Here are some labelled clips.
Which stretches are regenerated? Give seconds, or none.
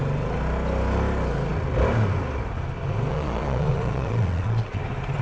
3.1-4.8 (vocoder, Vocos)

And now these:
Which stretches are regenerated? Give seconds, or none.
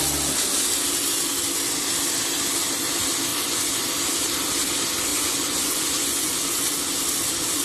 3.3-3.8 (vocoder, Vocos); 5.1-6.3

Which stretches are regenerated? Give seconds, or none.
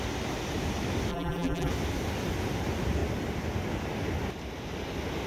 1.1-1.7 (vocoder, BigVGAN v2)